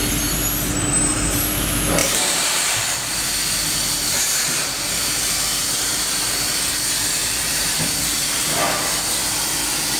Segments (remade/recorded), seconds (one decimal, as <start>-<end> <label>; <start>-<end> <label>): 0.0-0.9 recorded; 0.9-1.5 remade; 1.5-2.0 recorded; 2.0-6.0 remade; 6.0-7.2 recorded; 7.2-8.1 remade; 8.1-10.0 recorded